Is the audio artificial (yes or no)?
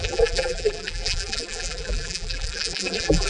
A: yes